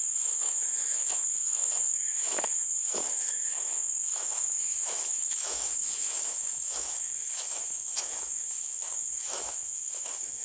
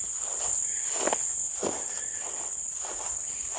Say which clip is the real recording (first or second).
second